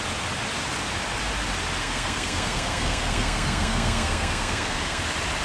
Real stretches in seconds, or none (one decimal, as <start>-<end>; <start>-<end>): 0.0-1.8; 5.0-5.4